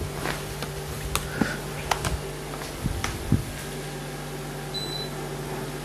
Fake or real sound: real